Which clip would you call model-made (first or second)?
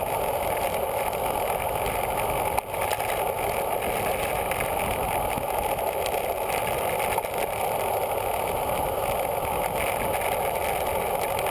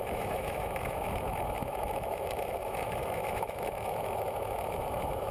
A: second